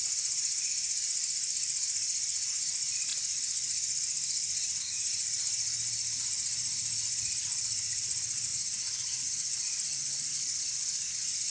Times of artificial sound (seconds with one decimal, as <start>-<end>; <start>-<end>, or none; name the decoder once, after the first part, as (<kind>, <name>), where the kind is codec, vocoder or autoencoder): none